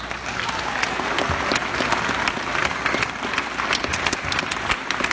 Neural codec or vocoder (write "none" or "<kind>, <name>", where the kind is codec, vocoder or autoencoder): none